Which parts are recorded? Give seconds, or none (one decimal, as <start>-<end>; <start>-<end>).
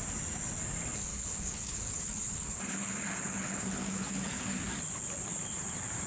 0.0-1.1; 4.6-6.1